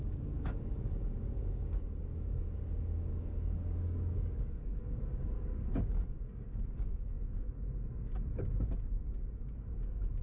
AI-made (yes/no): yes